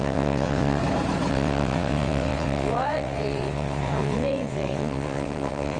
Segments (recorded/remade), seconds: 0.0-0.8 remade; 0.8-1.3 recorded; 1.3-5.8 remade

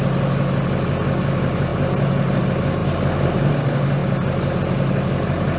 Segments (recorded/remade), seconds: 0.0-5.6 recorded